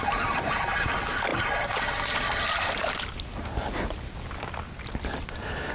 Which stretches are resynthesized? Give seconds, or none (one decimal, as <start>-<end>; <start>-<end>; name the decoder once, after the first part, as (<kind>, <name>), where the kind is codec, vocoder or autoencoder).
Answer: none